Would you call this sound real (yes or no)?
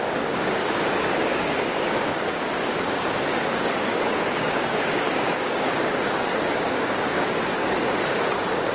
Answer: no